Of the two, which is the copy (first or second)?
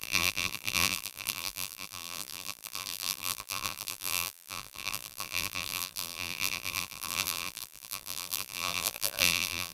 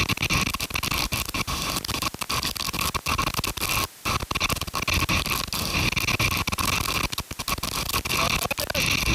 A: first